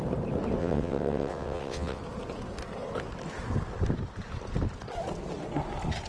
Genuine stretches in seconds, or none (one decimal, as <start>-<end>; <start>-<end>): 0.0-0.6; 2.0-6.1